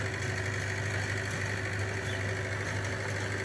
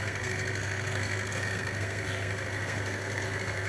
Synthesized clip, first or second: second